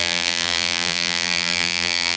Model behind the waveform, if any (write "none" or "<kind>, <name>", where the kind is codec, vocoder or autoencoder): vocoder, BigVGAN v2